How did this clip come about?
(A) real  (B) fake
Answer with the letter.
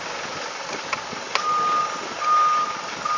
A